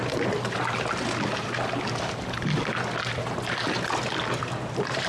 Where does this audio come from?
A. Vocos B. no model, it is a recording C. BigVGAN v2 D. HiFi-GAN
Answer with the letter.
B